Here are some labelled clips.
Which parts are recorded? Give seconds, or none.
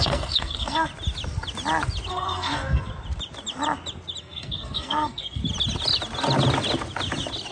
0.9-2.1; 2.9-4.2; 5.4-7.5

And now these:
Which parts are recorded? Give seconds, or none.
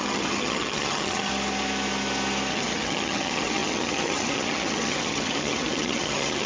1.3-2.5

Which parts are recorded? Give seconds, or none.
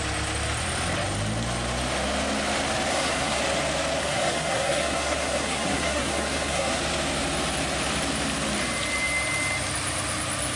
0.0-2.9; 3.4-4.0; 6.8-10.6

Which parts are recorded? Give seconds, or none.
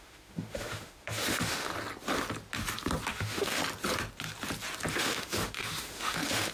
1.7-3.1; 3.6-4.9